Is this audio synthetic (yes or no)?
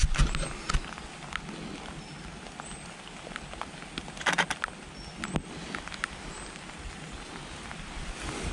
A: no